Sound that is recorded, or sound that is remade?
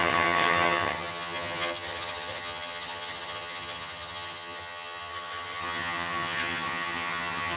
remade